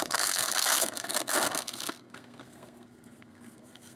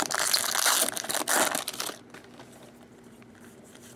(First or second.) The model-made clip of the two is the first